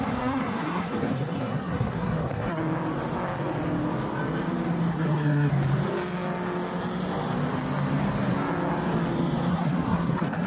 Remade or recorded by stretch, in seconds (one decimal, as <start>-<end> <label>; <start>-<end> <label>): 0.0-2.6 remade; 2.6-4.9 recorded; 4.9-5.5 remade; 5.5-9.5 recorded; 9.5-10.5 remade